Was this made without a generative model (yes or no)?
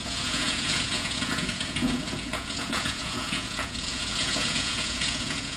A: no